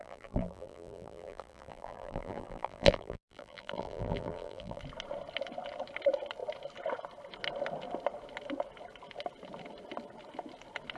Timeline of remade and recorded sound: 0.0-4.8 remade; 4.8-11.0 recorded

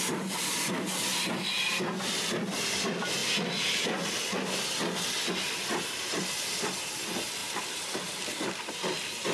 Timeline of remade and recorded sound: 0.0-9.3 recorded

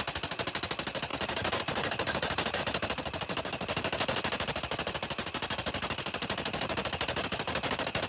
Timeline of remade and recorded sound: 0.0-1.1 recorded; 1.1-2.6 remade; 2.6-8.1 recorded

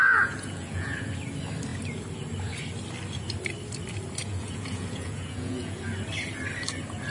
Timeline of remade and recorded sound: 0.0-1.1 remade; 1.1-4.2 recorded; 4.2-5.8 remade; 5.8-7.1 recorded

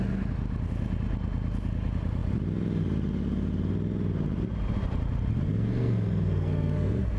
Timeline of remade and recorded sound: 0.0-5.5 recorded; 5.5-7.2 remade

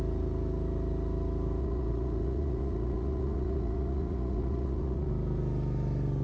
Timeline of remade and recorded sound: 0.0-1.6 recorded; 1.6-5.1 remade; 5.1-6.2 recorded

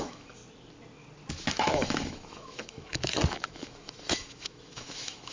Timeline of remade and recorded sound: 0.0-0.4 remade; 0.4-1.5 recorded; 1.5-5.3 remade

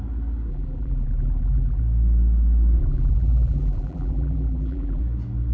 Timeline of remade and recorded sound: 0.0-0.5 recorded; 0.5-1.8 remade; 1.8-2.8 recorded; 2.8-5.0 remade; 5.0-5.5 recorded